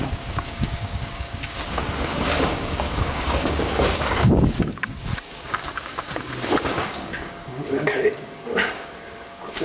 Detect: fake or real fake